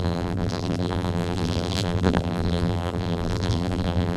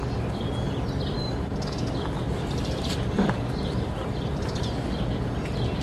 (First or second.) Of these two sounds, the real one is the second